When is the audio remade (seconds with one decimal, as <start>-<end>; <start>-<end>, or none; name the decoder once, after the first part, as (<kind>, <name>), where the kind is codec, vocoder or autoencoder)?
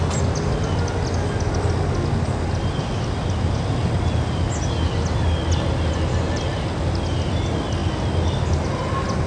none